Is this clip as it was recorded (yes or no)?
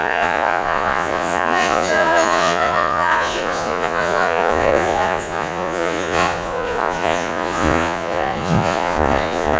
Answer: no